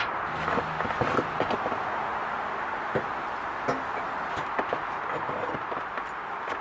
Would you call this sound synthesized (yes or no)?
no